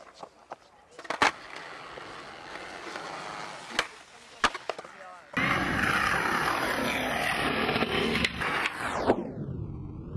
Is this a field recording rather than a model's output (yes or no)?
yes